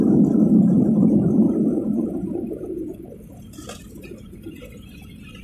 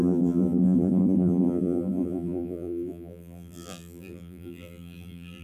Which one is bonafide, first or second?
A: first